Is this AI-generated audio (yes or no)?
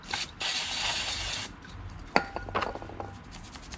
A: no